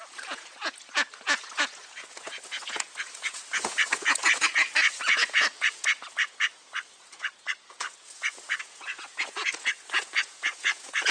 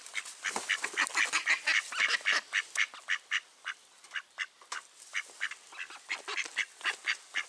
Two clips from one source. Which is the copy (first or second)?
first